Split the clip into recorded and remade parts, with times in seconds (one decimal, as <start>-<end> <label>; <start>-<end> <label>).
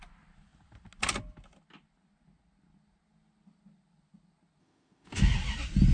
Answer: 0.0-4.6 recorded; 4.6-5.2 remade; 5.2-5.9 recorded